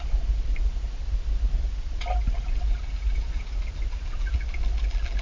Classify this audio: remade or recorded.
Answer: recorded